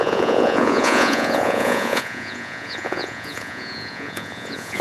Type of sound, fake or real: fake